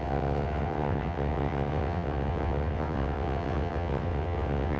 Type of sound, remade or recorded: remade